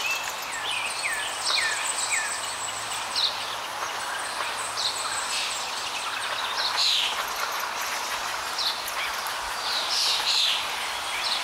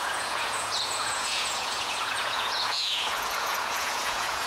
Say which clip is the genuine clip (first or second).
first